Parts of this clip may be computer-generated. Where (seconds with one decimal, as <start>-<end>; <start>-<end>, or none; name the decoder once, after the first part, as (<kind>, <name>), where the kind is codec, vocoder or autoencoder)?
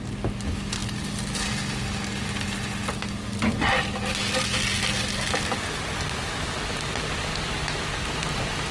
0.8-1.5 (vocoder, BigVGAN v2)